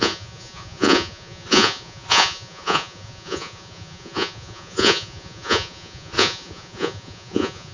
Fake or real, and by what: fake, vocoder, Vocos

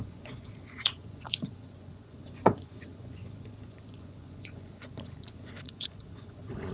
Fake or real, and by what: fake, vocoder, Vocos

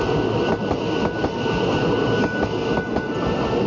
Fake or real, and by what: real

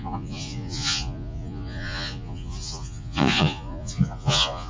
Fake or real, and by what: fake, vocoder, Vocos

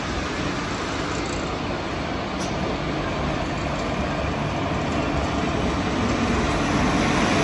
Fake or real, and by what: real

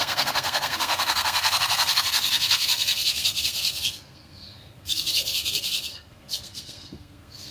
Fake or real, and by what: fake, codec, SNAC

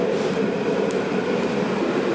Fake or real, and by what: real